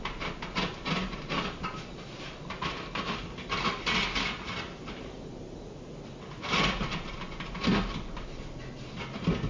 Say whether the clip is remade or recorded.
recorded